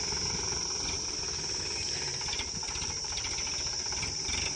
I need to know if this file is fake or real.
real